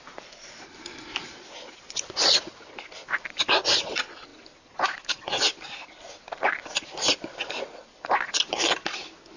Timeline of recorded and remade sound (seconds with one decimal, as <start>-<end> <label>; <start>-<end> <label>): 0.0-9.4 recorded